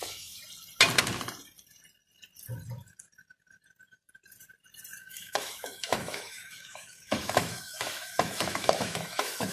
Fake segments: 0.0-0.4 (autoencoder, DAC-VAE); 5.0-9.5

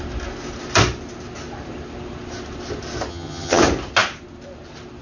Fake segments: 3.1-3.6 (vocoder, HiFi-GAN)

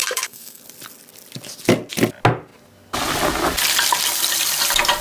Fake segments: 0.0-0.6 (codec, SNAC)

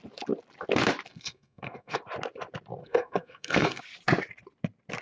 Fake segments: 1.1-2.0 (codec, SNAC); 2.8-3.8

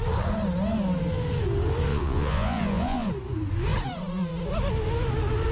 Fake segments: 1.9-3.1 (vocoder, Vocos)

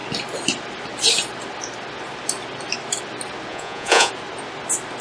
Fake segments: 3.5-4.1 (vocoder, Vocos)

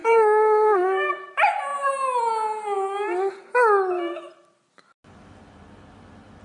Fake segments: 0.0-1.1 (codec, SNAC)